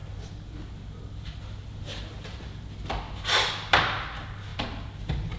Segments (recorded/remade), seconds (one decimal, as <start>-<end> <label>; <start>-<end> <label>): 0.0-4.5 recorded; 4.5-5.4 remade